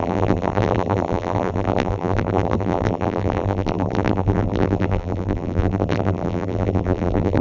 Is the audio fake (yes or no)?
yes